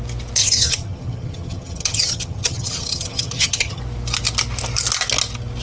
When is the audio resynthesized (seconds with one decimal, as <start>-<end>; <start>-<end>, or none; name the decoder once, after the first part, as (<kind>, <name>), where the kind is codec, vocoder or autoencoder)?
0.4-3.8 (vocoder, HiFi-GAN)